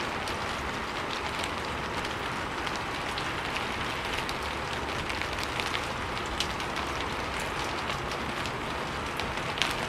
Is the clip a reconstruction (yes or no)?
no